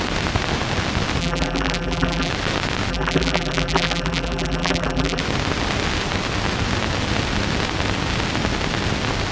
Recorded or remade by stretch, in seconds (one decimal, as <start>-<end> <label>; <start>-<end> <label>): 0.0-1.2 recorded; 1.2-2.3 remade; 2.3-2.9 recorded; 2.9-5.2 remade; 5.2-9.3 recorded